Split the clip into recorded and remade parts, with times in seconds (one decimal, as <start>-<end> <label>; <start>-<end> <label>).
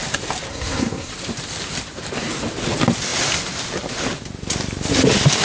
0.0-0.5 recorded; 0.5-1.1 remade; 1.1-5.4 recorded